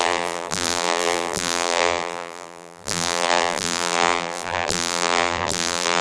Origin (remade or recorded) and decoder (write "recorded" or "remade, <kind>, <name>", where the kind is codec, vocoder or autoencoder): remade, vocoder, BigVGAN v2